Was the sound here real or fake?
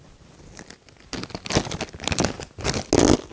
real